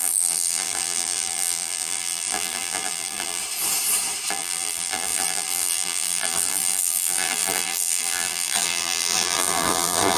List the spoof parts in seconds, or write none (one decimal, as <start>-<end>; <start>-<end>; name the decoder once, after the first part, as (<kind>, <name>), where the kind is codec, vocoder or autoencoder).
0.0-3.4 (vocoder, BigVGAN v2); 4.3-10.2